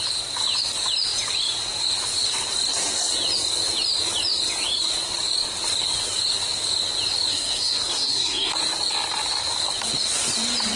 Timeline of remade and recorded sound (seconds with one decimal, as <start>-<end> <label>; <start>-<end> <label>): 0.0-7.3 recorded; 7.3-8.5 remade; 8.5-10.8 recorded